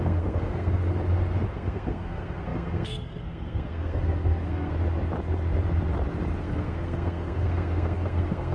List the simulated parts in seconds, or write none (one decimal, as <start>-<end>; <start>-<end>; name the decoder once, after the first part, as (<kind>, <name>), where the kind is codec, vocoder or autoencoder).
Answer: 0.0-0.8 (codec, SNAC); 1.5-4.7; 6.4-8.5